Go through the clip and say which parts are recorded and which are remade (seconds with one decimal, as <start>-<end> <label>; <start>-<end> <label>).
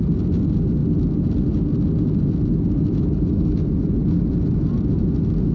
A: 0.0-4.0 recorded; 4.0-4.9 remade; 4.9-5.5 recorded